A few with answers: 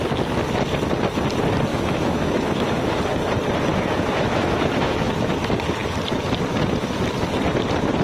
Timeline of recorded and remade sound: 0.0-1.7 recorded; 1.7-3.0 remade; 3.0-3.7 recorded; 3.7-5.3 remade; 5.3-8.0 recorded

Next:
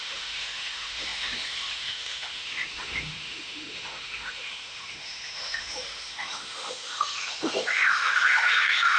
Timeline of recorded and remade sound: 0.0-9.0 remade

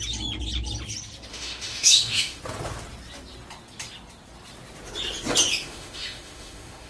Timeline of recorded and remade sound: 0.0-1.3 recorded; 1.3-2.4 remade; 2.4-5.6 recorded; 5.6-6.9 remade

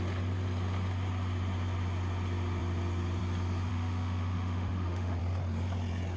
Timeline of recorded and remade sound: 0.0-3.7 recorded; 3.7-5.2 remade; 5.2-6.2 recorded

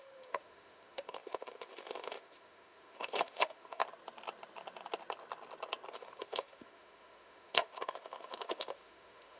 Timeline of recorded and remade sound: 0.0-3.8 remade; 3.8-5.9 recorded; 5.9-9.4 remade

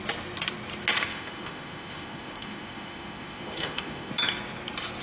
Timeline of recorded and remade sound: 0.0-1.1 recorded; 1.1-4.1 remade; 4.1-5.0 recorded